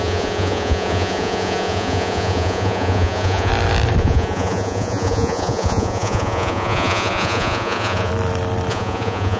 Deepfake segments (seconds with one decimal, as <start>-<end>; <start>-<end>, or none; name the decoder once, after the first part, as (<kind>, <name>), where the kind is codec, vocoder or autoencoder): 0.0-3.5 (vocoder, Vocos); 4.0-8.1; 8.7-9.4